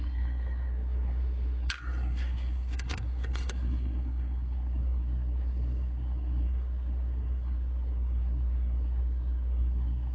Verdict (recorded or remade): remade